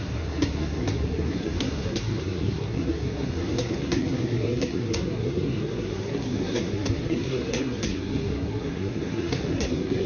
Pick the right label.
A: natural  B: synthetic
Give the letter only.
B